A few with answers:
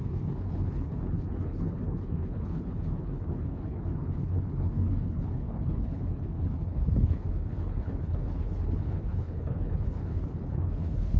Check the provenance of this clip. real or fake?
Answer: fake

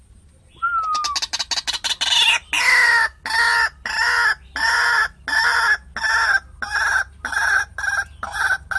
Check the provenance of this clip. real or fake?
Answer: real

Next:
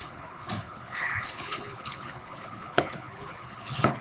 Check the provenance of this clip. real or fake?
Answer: fake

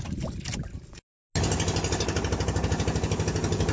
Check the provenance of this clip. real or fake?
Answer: real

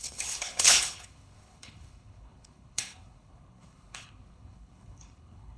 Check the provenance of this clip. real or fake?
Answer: fake